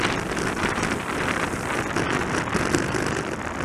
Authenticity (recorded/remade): recorded